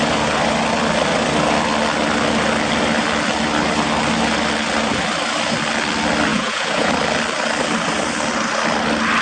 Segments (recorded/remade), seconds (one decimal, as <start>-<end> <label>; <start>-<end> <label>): 0.0-6.3 recorded; 6.3-6.9 remade; 6.9-9.2 recorded